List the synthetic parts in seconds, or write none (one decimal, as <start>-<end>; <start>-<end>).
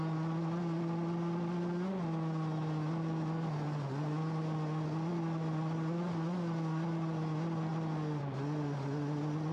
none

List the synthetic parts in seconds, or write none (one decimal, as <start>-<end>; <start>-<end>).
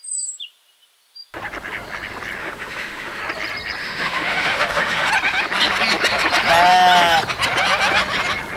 2.4-3.2; 3.8-5.1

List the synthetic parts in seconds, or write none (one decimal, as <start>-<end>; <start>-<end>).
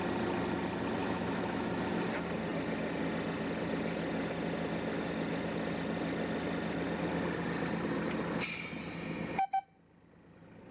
1.0-1.8